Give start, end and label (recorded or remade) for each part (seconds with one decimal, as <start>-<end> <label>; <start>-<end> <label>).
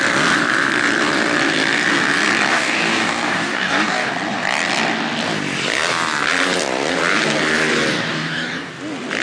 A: 0.0-2.5 recorded; 2.5-4.1 remade; 4.1-8.1 recorded; 8.1-8.7 remade; 8.7-9.2 recorded